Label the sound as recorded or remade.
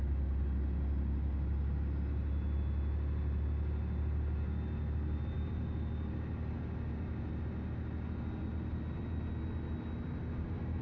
recorded